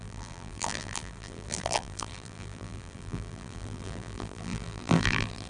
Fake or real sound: fake